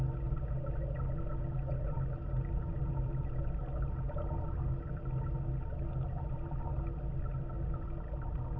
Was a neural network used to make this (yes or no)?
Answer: no